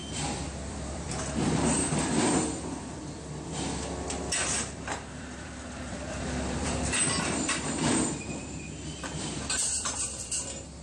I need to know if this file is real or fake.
fake